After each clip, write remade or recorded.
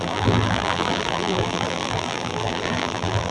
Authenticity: remade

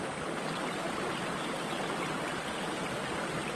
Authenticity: recorded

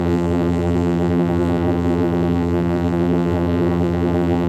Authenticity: remade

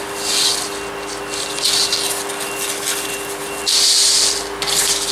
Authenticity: recorded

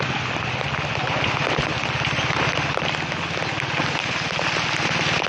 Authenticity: recorded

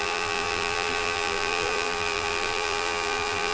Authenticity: remade